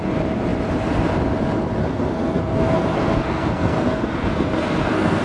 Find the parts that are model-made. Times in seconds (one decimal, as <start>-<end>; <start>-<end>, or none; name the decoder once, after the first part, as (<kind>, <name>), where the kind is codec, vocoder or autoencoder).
1.8-5.2 (codec, SNAC)